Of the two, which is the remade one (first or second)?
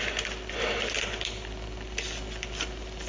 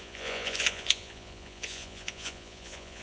second